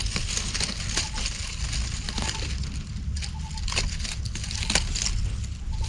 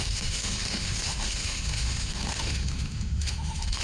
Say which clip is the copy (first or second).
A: second